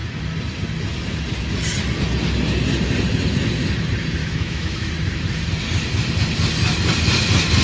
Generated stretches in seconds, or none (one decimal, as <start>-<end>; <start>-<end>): 4.2-4.9